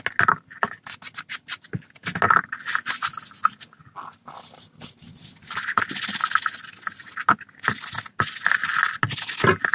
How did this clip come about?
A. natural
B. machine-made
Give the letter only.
A